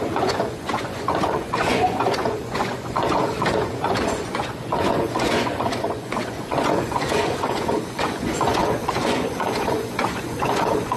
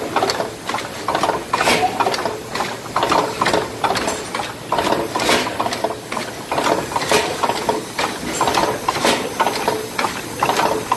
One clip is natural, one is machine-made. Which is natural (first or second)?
second